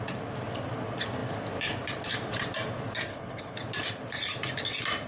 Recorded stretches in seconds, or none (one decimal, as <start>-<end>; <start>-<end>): 0.0-3.1; 3.6-5.1